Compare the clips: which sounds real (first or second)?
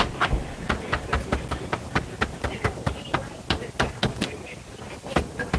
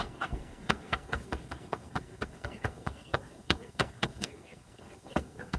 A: first